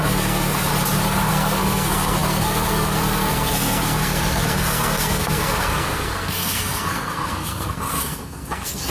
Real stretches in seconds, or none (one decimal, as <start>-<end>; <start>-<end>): 0.7-1.3